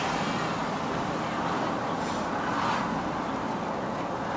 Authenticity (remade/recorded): recorded